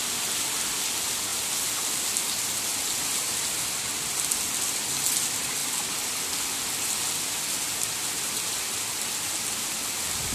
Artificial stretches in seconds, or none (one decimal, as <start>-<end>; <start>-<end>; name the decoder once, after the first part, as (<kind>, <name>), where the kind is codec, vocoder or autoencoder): none